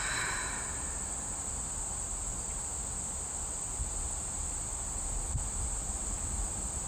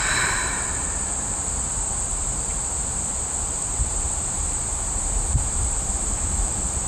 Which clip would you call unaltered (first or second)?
first